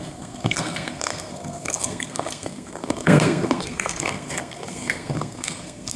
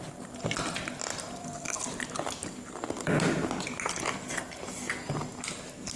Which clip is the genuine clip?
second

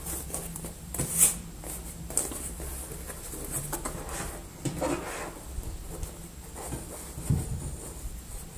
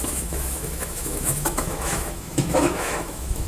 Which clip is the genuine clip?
first